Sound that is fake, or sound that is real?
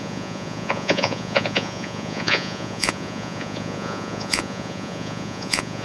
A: fake